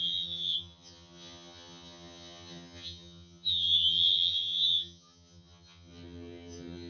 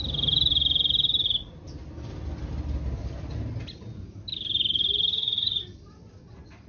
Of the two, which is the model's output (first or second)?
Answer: first